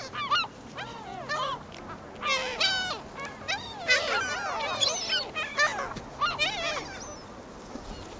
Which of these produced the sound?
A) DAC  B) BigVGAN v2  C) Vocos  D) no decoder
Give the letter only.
D